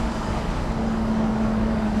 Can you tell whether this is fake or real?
fake